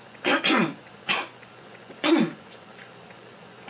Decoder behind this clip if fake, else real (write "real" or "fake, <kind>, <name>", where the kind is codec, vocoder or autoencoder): fake, vocoder, Vocos